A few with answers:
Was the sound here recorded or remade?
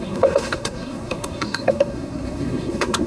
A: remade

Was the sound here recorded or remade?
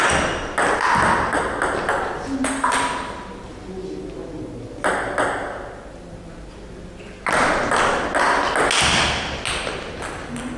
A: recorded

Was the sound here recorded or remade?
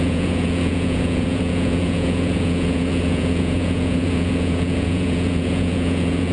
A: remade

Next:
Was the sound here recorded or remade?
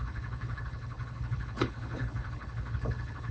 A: remade